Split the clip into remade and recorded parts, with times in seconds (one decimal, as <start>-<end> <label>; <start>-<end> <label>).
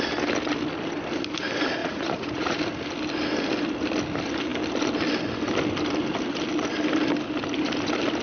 0.0-1.8 recorded; 1.8-2.6 remade; 2.6-8.2 recorded